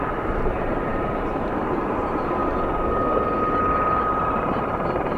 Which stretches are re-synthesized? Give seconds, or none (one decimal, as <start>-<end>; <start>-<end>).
0.0-2.4; 4.4-5.2